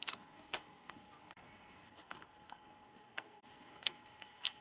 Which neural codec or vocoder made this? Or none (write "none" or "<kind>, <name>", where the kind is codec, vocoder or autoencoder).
codec, SNAC